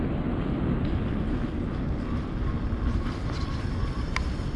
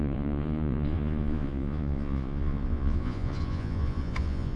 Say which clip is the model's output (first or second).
second